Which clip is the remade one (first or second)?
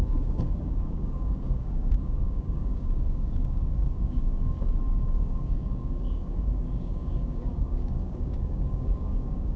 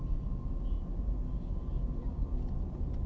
first